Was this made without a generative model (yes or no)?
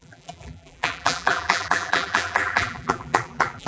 no